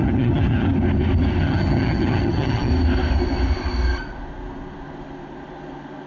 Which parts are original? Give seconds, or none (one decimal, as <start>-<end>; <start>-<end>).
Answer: 0.7-1.4; 2.7-6.1

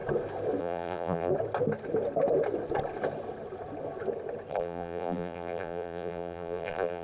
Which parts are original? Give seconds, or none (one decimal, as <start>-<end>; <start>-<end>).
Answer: 0.0-0.6; 1.3-4.5

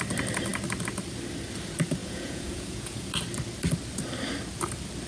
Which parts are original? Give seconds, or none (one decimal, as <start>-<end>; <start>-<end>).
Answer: 0.0-2.0; 3.1-5.1

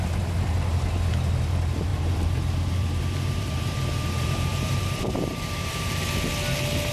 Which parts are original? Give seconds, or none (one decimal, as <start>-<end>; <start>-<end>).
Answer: 0.0-1.9; 6.0-6.9

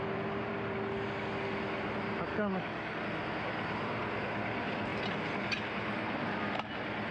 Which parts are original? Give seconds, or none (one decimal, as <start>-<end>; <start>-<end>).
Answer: 0.0-2.3; 3.0-7.1

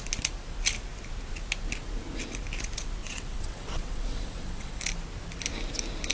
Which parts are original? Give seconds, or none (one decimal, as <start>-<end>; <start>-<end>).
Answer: 0.0-3.0; 4.8-6.1

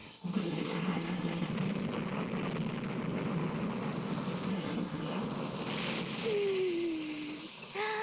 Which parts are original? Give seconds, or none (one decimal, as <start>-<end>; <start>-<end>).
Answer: 1.5-4.5; 5.2-8.0